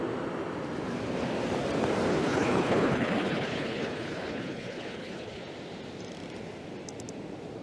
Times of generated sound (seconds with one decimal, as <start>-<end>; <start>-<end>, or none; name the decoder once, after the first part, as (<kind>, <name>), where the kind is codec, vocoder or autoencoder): 2.1-5.4 (codec, HILCodec)